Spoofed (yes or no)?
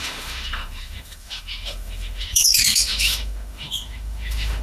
yes